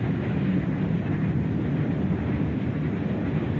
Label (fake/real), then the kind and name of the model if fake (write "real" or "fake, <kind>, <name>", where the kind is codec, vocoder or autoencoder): real